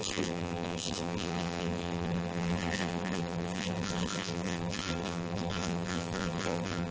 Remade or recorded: remade